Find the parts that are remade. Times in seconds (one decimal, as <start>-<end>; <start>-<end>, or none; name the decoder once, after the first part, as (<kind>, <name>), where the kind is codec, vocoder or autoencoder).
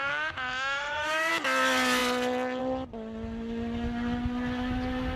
0.0-1.3 (autoencoder, DAC-VAE)